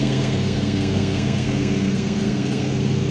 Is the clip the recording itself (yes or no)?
no